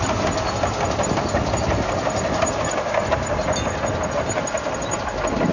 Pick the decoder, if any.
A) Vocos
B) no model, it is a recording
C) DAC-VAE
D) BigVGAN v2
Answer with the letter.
B